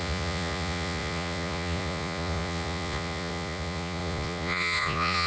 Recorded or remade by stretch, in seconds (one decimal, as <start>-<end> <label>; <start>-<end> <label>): 0.0-5.3 remade